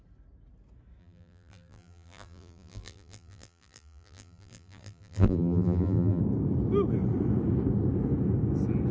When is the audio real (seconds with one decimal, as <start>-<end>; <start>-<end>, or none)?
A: 0.0-1.0; 6.2-8.9